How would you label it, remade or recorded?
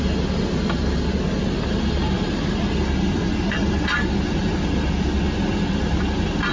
recorded